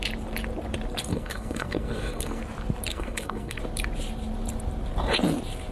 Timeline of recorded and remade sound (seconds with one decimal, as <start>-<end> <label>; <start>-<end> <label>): 0.0-1.1 recorded; 1.1-2.4 remade; 2.4-2.9 recorded; 2.9-3.6 remade; 3.6-5.7 recorded